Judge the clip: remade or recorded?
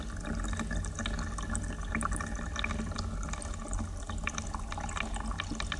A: recorded